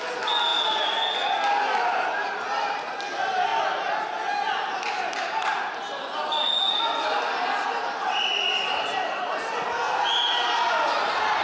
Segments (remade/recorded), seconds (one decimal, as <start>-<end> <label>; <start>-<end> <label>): 0.0-11.4 recorded